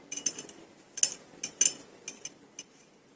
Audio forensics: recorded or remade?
recorded